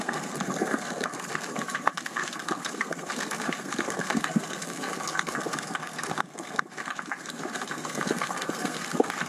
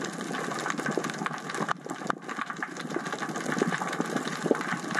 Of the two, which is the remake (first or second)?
first